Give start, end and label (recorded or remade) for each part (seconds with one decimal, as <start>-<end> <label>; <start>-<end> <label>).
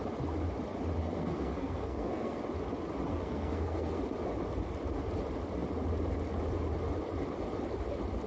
0.0-1.0 recorded; 1.0-2.4 remade; 2.4-3.1 recorded; 3.1-4.0 remade; 4.0-8.3 recorded